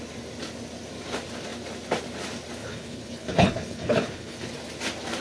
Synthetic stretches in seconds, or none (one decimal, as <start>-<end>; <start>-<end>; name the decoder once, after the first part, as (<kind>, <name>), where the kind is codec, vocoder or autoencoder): 2.6-4.5 (codec, HILCodec)